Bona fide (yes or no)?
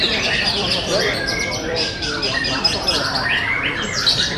no